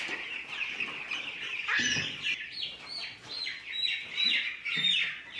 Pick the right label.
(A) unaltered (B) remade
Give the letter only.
A